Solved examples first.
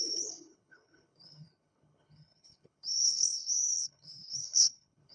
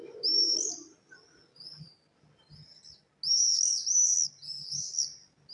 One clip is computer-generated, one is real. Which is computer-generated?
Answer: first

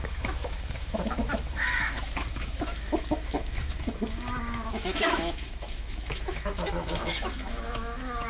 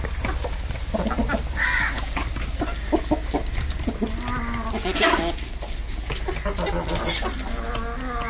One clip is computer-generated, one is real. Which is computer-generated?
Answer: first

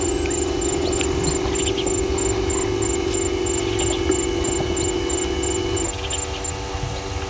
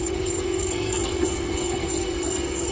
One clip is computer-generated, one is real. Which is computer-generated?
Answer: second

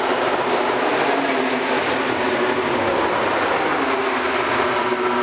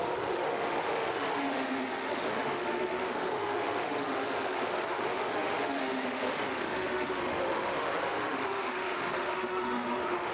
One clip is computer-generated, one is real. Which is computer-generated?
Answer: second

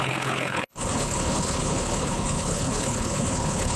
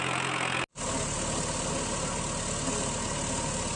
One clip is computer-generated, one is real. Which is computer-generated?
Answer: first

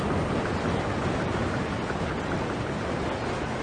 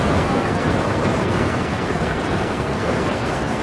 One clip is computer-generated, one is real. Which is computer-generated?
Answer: second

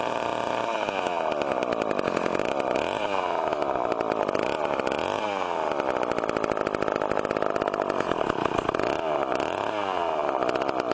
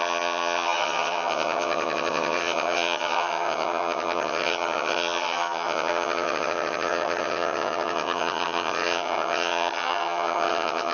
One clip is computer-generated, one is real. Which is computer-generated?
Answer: second